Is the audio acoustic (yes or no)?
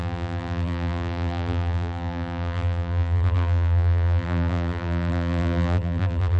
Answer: no